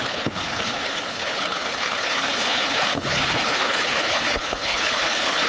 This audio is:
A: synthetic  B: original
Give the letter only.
A